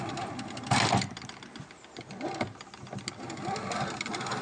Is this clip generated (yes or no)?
no